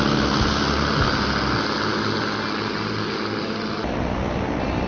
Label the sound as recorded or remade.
recorded